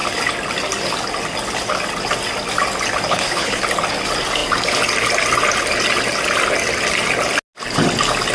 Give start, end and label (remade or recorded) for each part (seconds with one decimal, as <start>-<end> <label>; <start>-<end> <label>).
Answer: 0.0-3.1 recorded; 3.1-3.6 remade; 3.6-8.3 recorded